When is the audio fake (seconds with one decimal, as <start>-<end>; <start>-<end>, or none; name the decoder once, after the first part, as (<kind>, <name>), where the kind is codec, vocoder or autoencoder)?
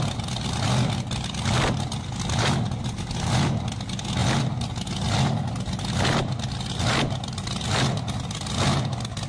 none